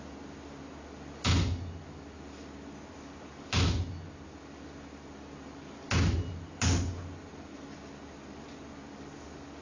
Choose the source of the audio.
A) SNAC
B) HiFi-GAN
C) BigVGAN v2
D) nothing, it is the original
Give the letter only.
D